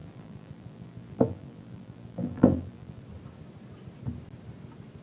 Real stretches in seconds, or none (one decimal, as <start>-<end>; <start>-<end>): 3.0-5.0